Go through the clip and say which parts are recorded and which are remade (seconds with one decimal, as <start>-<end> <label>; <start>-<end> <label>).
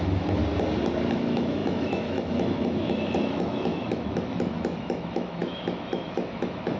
0.0-0.4 remade; 0.4-1.1 recorded; 1.1-6.8 remade